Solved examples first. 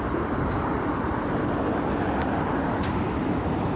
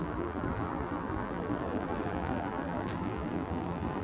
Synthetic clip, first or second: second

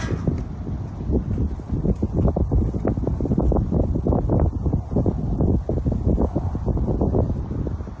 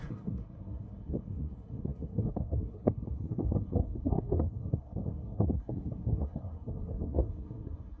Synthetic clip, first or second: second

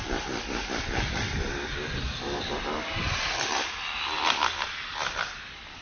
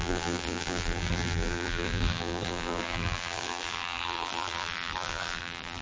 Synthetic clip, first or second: second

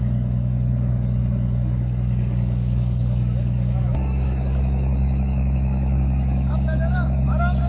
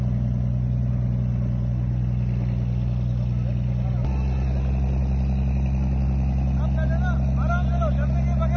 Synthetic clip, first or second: first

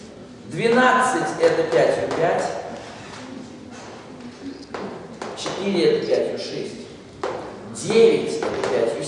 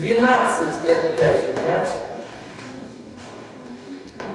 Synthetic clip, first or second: second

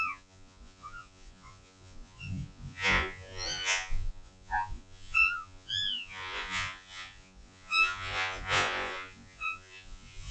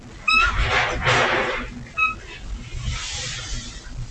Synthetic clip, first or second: first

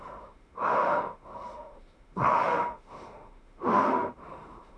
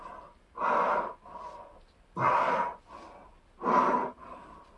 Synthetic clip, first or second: first